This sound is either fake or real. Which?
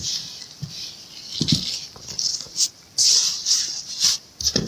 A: fake